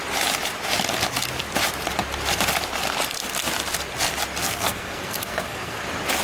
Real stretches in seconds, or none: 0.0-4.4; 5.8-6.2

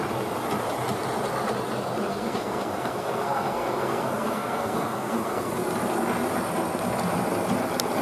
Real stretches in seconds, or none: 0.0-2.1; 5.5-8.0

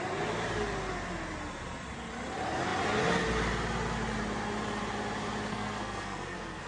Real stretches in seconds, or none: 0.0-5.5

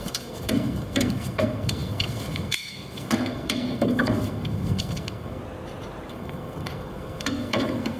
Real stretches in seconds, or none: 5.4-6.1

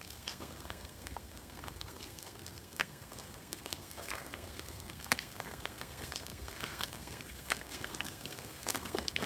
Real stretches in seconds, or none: none

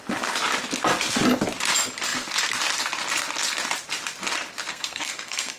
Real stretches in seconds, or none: 0.0-4.7

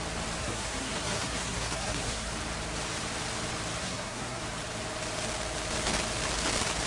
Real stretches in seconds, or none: 0.0-0.4; 2.3-3.8; 4.4-6.9